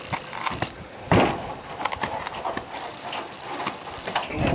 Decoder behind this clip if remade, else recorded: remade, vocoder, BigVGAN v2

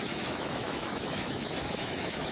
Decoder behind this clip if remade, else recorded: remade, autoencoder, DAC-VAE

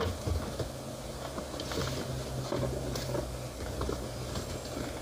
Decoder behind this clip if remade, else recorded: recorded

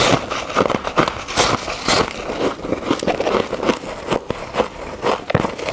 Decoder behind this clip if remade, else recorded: recorded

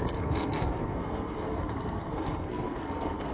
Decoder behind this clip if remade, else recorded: remade, codec, SNAC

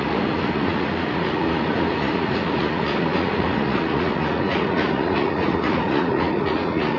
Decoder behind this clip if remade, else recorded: remade, vocoder, Vocos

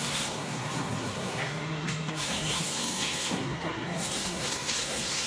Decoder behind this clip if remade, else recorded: remade, codec, SNAC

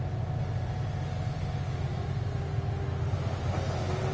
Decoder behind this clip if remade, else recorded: recorded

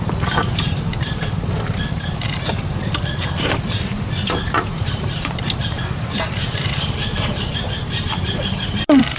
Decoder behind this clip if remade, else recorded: remade, vocoder, BigVGAN v2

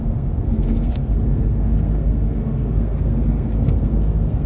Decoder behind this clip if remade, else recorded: remade, codec, SNAC